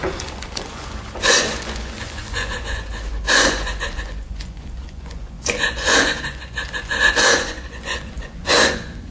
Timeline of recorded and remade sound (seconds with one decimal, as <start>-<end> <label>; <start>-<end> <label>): 0.0-9.1 remade